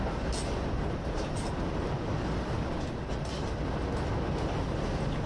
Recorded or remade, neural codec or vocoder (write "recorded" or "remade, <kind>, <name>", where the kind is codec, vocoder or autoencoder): recorded